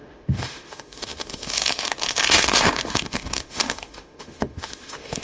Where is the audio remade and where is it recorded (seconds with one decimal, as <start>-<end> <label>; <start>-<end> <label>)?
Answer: 0.0-5.2 remade